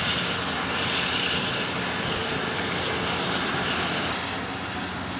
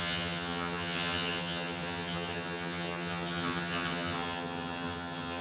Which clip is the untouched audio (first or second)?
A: first